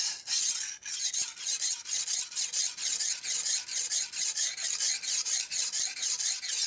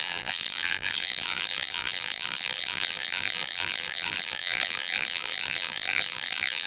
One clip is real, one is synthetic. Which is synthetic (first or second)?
second